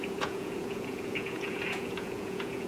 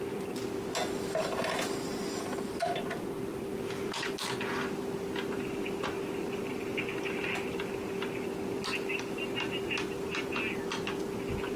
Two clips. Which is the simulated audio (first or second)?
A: first